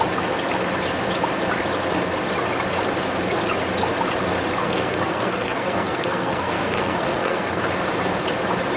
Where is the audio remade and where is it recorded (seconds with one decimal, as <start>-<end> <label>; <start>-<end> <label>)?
0.0-4.6 recorded; 4.6-7.6 remade; 7.6-8.8 recorded